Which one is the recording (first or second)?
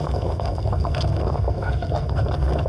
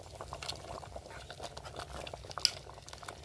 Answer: second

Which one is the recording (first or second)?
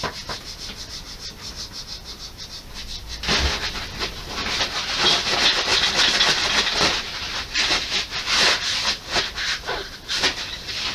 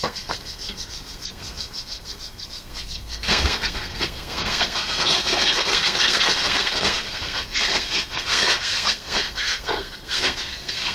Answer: first